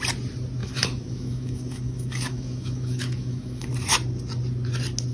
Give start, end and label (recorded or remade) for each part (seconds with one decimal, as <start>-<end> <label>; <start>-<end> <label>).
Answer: 0.0-0.6 recorded; 0.6-3.7 remade; 3.7-5.1 recorded